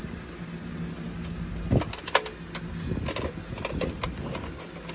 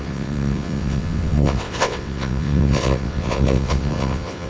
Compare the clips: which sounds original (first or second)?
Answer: first